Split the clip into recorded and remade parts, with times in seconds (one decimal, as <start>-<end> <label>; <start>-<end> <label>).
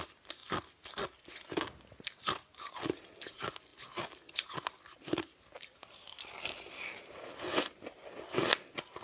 0.0-0.4 remade; 0.4-1.9 recorded; 1.9-3.7 remade; 3.7-6.7 recorded; 6.7-9.0 remade